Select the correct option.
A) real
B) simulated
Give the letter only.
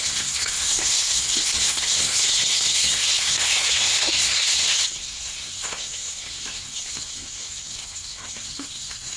B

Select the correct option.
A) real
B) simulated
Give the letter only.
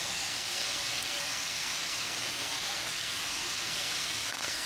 B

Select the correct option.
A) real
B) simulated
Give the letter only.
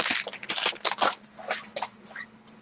A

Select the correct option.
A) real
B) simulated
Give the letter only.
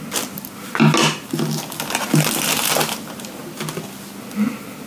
A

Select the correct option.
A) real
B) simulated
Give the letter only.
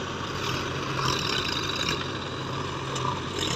A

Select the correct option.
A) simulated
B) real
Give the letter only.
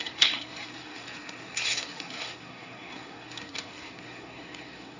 A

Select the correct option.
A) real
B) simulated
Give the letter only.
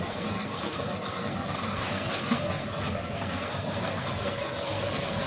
B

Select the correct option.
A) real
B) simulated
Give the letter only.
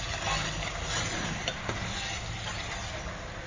A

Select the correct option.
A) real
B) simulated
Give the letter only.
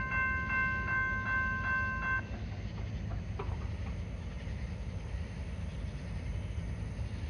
A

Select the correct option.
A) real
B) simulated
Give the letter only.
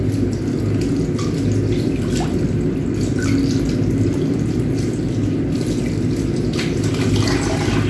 A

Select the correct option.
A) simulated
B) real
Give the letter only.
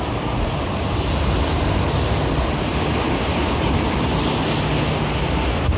B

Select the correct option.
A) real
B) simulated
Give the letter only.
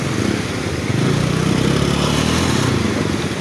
A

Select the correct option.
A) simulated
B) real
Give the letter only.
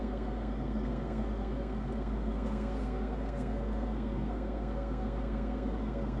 A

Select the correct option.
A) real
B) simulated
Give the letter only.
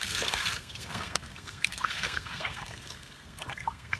B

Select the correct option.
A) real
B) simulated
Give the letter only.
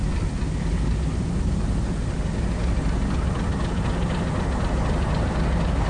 A